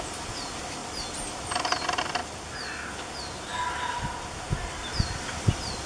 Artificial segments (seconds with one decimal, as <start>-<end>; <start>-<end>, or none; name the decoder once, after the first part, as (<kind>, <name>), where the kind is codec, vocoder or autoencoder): none